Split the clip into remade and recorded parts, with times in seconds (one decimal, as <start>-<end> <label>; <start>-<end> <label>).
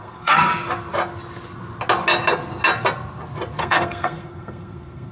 0.0-0.5 remade; 0.5-3.6 recorded; 3.6-5.1 remade